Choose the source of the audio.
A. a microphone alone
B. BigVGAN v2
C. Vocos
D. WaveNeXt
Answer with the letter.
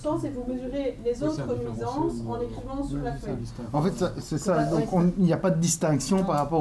A